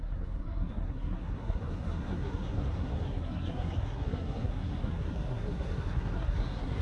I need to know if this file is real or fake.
fake